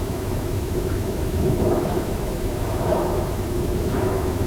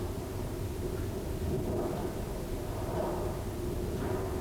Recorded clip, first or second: second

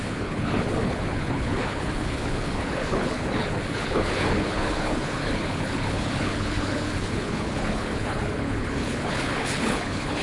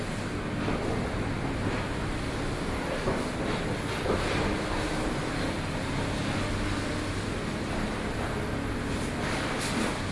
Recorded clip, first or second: second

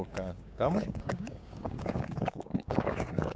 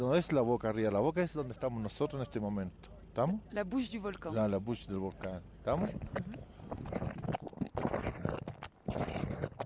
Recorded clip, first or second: second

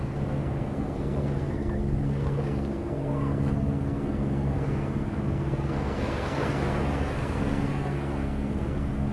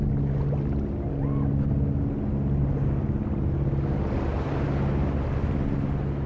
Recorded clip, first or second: second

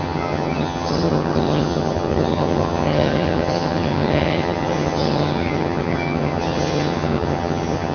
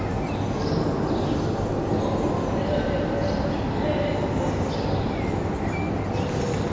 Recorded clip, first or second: second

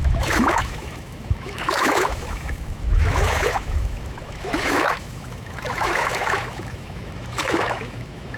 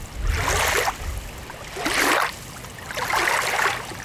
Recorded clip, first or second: second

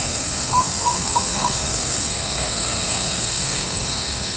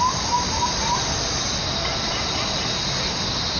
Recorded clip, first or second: second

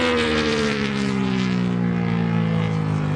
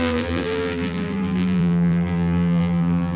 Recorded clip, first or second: first